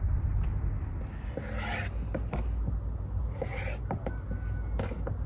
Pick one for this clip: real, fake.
real